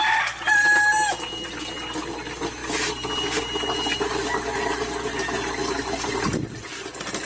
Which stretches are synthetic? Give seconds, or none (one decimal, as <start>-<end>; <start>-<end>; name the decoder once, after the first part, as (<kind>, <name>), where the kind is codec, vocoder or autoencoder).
none